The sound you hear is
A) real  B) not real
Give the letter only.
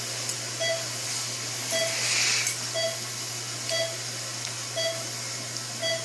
A